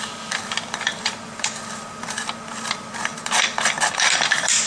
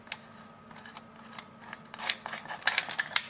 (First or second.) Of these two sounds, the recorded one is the second